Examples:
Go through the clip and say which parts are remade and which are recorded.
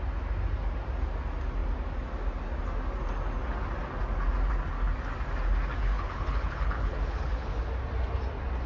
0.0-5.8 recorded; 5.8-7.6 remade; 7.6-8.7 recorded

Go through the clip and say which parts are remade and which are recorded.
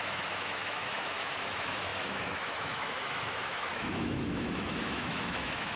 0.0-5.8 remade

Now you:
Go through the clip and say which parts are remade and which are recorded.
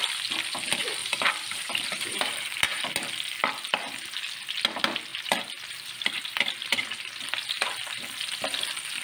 0.0-1.0 recorded; 1.0-2.8 remade; 2.8-9.0 recorded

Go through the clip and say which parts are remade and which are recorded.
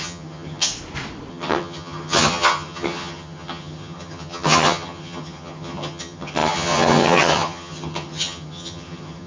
0.0-0.7 remade; 0.7-1.3 recorded; 1.3-9.3 remade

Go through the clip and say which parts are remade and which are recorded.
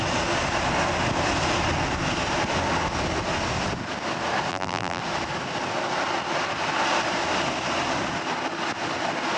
0.0-4.5 recorded; 4.5-5.0 remade; 5.0-9.4 recorded